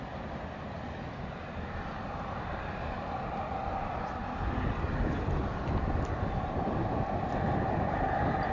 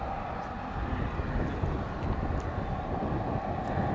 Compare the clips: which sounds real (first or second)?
second